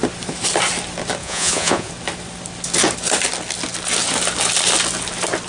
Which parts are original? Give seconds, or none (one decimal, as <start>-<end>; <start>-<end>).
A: 0.0-1.2; 1.9-5.5